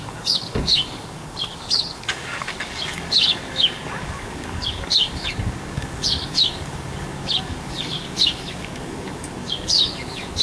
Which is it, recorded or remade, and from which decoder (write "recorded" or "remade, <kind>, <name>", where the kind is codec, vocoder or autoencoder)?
remade, codec, DAC